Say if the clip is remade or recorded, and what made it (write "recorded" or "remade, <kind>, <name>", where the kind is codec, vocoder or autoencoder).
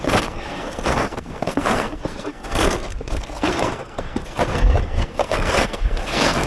remade, codec, SNAC